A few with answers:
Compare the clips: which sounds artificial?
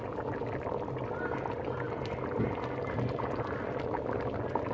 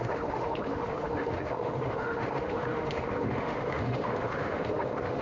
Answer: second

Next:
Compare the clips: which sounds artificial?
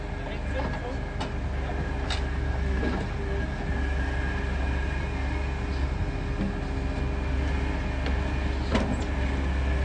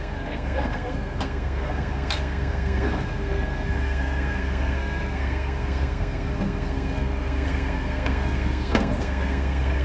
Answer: second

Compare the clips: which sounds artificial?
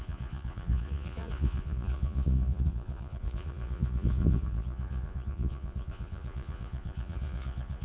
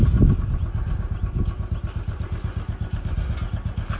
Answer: first